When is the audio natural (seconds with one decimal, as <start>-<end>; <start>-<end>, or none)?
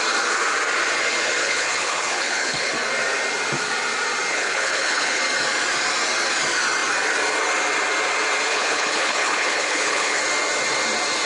0.0-1.4; 2.7-4.3; 5.2-8.5; 10.2-11.3